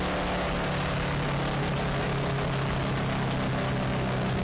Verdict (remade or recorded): recorded